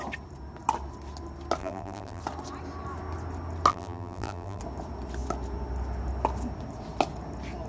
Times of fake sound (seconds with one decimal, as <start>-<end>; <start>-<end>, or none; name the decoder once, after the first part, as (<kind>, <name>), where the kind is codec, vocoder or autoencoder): 1.6-2.2 (vocoder, BigVGAN v2); 3.7-4.6